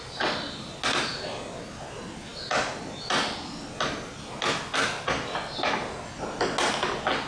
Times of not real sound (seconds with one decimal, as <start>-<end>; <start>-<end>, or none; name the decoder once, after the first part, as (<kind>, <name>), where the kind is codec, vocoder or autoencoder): none